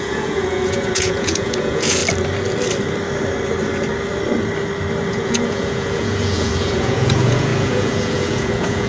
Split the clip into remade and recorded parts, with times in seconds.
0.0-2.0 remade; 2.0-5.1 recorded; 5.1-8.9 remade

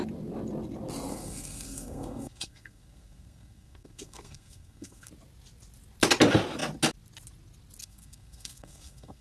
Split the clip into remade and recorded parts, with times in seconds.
0.0-1.1 recorded; 1.1-5.1 remade; 5.1-7.8 recorded; 7.8-9.2 remade